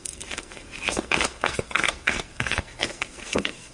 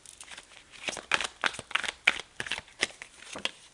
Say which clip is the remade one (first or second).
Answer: first